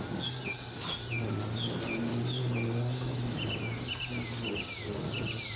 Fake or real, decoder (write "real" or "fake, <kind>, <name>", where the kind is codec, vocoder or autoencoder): real